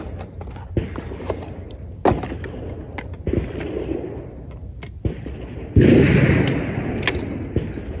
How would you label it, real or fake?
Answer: real